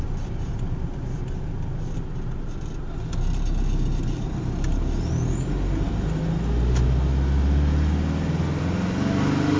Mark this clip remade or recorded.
recorded